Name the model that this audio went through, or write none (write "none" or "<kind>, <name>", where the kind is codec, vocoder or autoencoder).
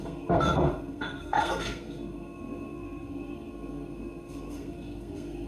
codec, SNAC